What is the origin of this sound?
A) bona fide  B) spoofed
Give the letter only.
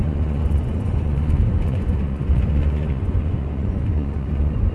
B